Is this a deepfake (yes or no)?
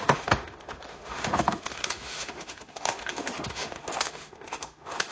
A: yes